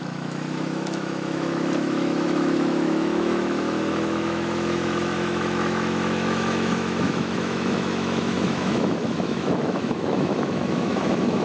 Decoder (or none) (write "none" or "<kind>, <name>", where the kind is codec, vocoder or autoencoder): autoencoder, DAC-VAE